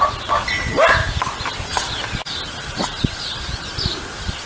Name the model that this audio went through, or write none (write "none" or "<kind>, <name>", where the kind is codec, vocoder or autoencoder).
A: none